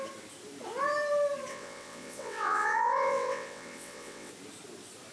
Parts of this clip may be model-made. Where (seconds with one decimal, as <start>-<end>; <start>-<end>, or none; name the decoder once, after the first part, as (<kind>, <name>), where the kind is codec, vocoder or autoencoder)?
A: 1.5-4.3 (vocoder, WaveNeXt)